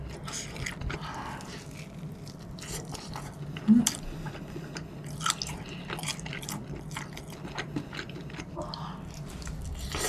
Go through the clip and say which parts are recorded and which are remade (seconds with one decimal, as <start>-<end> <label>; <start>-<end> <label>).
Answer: 0.0-10.1 recorded